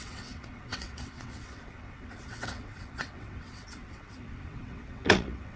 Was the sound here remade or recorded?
remade